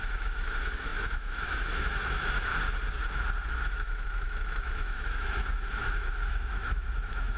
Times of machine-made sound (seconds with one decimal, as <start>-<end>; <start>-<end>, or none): 0.0-2.5; 3.7-7.4